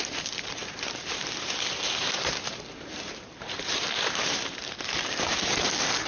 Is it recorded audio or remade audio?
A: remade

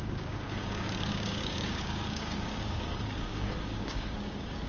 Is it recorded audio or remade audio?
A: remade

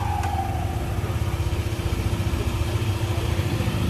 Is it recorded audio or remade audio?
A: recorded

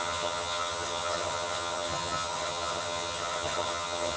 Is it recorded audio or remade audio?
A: remade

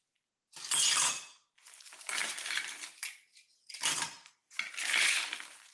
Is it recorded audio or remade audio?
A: recorded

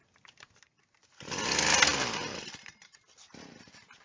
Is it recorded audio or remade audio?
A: recorded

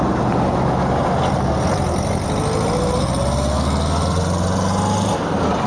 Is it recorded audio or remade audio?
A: recorded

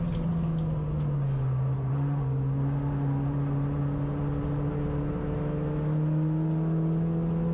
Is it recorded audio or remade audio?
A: recorded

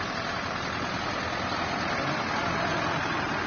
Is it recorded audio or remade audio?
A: recorded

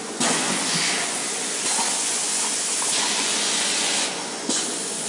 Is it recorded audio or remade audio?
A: remade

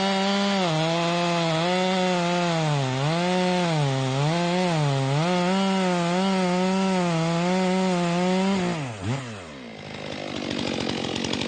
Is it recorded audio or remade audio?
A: recorded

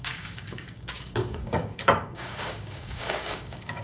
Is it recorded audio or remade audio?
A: remade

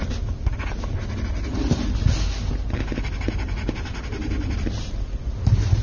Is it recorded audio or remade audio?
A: recorded